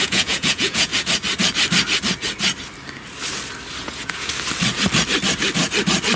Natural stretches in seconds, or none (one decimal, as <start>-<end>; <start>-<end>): 0.9-3.8; 4.3-6.2